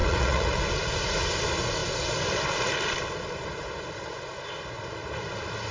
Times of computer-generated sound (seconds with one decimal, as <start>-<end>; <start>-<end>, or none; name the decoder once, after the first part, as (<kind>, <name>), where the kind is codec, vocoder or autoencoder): 0.0-0.6 (vocoder, Vocos)